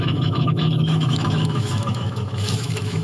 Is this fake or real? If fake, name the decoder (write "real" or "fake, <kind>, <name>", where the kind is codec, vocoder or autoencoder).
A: fake, autoencoder, DAC-VAE